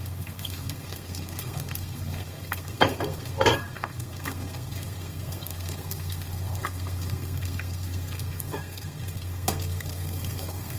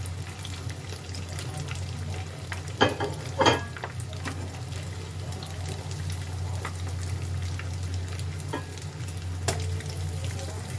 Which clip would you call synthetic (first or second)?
first